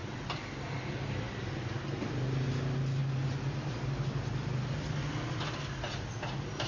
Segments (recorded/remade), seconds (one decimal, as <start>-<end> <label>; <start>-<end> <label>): 0.0-1.3 remade; 1.3-3.0 recorded; 3.0-4.0 remade; 4.0-6.7 recorded

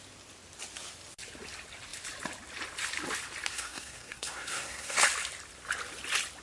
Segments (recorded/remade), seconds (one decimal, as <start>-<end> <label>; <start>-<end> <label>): 0.0-3.5 recorded; 3.5-5.0 remade; 5.0-6.4 recorded

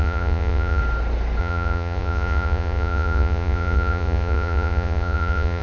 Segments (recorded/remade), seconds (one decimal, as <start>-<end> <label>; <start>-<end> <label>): 0.0-0.8 remade; 0.8-1.4 recorded; 1.4-5.6 remade

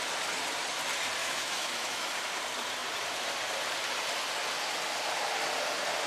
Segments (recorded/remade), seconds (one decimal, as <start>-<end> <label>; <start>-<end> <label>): 0.0-1.2 recorded; 1.2-2.1 remade; 2.1-6.1 recorded

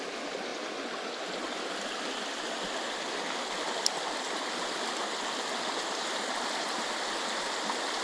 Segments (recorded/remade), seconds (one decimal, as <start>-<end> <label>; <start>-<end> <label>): 0.0-8.0 recorded

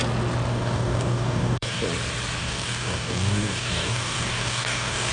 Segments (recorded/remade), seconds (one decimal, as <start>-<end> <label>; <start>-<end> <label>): 0.0-0.5 recorded; 0.5-1.8 remade; 1.8-2.4 recorded; 2.4-5.1 remade